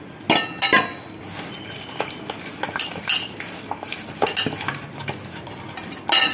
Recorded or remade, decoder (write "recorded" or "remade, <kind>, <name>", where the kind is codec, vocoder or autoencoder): recorded